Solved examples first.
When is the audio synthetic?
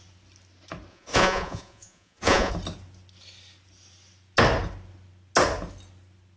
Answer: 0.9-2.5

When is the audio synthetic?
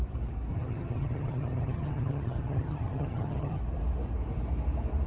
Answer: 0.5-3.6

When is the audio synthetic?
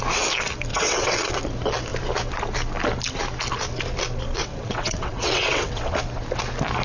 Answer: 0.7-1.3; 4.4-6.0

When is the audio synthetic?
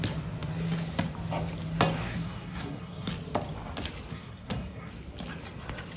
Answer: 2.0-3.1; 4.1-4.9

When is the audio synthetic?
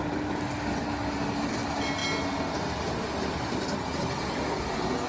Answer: none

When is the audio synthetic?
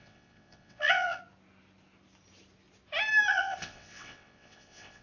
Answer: 0.0-1.2; 3.3-5.0